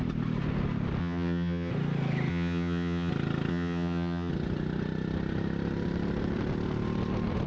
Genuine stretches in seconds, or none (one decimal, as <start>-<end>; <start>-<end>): 0.0-1.0; 1.7-2.3; 3.1-3.5; 4.3-7.5